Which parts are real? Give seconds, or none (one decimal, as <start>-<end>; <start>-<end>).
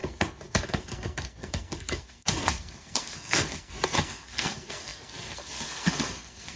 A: none